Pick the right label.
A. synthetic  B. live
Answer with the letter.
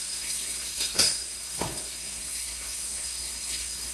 A